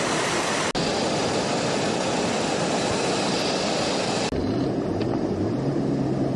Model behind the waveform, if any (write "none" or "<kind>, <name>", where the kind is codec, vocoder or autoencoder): none